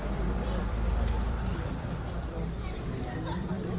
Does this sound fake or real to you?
fake